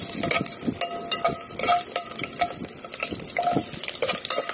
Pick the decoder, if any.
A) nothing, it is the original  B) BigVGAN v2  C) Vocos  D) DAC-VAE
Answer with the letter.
A